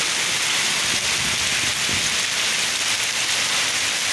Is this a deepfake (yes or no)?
no